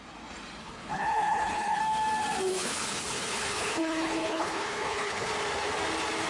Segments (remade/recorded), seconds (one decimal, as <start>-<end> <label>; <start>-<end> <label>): 0.0-0.6 recorded; 0.6-1.8 remade; 1.8-2.5 recorded; 2.5-5.3 remade; 5.3-6.3 recorded